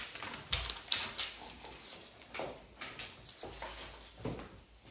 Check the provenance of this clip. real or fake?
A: real